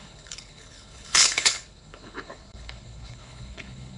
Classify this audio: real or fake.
fake